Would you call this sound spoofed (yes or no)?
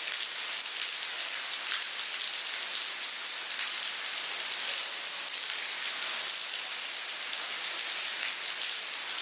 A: no